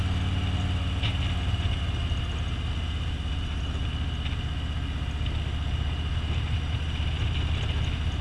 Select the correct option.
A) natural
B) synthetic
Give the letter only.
A